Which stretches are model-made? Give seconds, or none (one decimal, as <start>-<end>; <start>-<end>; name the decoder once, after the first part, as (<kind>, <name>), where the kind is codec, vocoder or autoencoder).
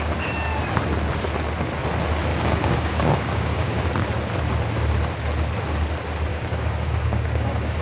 2.3-3.8 (codec, DAC); 6.3-7.8